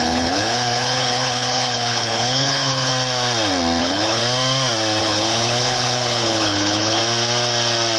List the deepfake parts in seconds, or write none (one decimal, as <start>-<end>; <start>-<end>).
0.0-2.9; 3.8-4.2; 5.0-7.0